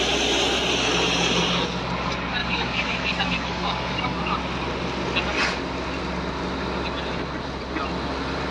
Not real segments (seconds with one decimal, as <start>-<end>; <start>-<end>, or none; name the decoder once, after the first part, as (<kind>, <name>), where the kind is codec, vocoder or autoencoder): 2.4-4.2 (codec, DAC)